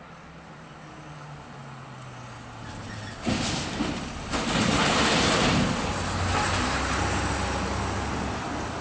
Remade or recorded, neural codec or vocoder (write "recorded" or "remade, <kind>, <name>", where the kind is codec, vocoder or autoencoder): recorded